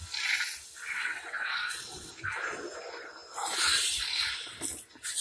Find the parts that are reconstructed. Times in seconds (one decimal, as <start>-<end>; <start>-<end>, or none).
1.0-2.1